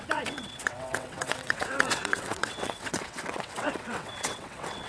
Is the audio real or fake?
fake